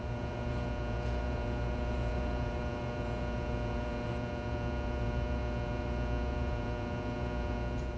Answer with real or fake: fake